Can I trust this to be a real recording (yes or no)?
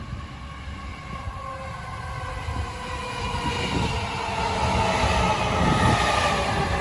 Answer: yes